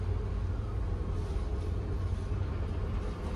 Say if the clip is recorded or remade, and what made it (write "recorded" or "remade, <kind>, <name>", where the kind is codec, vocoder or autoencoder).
recorded